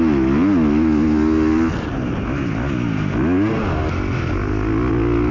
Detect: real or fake real